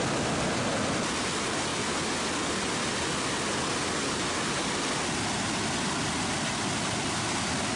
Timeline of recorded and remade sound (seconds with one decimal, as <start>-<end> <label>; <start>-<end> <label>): 0.0-7.8 recorded

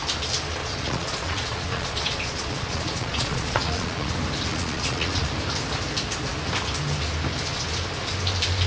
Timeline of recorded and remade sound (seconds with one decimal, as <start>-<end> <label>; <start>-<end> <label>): 0.0-0.6 recorded; 0.6-4.1 remade; 4.1-4.5 recorded; 4.5-5.3 remade; 5.3-8.7 recorded

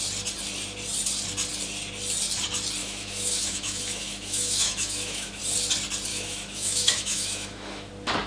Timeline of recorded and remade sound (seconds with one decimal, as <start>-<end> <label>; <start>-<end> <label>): 0.0-2.8 recorded; 2.8-5.4 remade; 5.4-6.1 recorded; 6.1-7.9 remade; 7.9-8.3 recorded

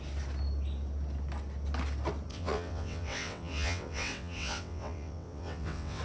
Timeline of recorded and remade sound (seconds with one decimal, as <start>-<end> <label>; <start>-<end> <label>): 0.0-2.3 recorded; 2.3-6.0 remade

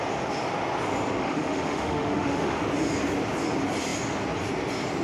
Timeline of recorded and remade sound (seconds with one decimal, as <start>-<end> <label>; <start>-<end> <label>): 0.0-1.2 recorded; 1.2-2.6 remade; 2.6-5.0 recorded